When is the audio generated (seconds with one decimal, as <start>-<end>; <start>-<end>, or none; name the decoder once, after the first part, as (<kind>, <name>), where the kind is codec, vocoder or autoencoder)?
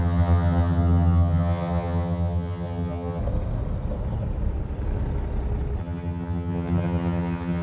0.0-3.2 (vocoder, HiFi-GAN); 5.8-7.6